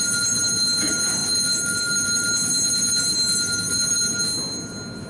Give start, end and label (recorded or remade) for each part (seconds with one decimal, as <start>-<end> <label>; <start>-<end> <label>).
0.0-5.1 recorded